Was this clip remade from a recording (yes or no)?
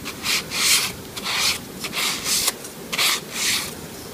no